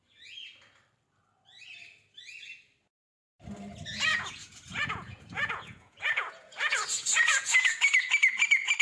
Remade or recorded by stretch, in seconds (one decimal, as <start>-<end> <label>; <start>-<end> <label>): 0.0-4.1 recorded; 4.1-7.7 remade; 7.7-8.8 recorded